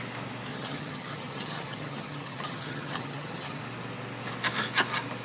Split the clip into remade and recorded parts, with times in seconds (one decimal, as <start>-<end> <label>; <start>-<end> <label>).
0.0-0.5 recorded; 0.5-3.6 remade; 3.6-5.2 recorded